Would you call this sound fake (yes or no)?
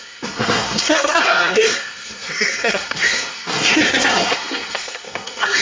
yes